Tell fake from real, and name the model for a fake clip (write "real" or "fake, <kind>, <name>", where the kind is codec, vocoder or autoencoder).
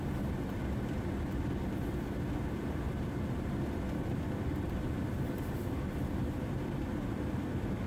real